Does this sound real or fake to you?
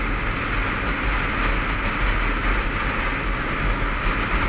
real